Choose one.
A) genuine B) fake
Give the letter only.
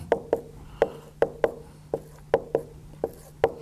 A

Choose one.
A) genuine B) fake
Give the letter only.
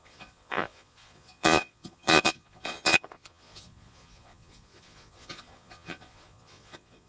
B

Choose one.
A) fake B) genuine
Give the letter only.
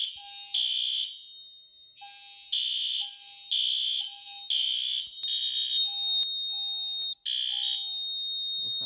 B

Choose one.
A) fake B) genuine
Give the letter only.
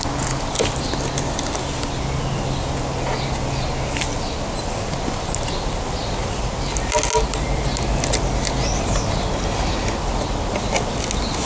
B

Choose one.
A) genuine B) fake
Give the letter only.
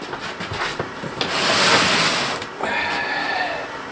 A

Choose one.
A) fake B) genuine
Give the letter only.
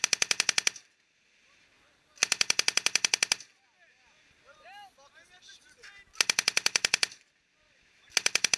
B